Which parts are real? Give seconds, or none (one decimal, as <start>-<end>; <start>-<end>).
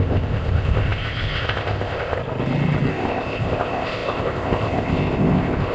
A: 2.2-2.9